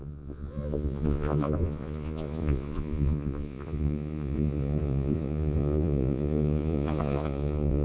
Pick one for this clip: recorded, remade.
remade